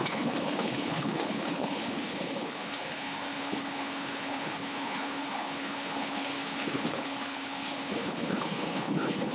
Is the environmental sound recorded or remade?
remade